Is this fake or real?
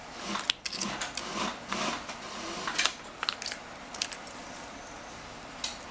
real